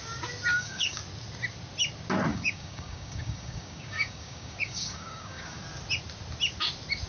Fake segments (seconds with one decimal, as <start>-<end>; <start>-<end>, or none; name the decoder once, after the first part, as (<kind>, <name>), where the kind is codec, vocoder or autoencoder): 0.5-1.0 (codec, DAC); 2.3-5.6